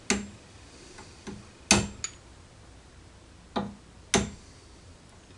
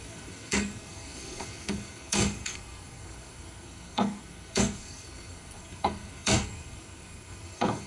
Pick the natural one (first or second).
first